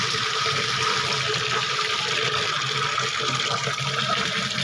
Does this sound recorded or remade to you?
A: recorded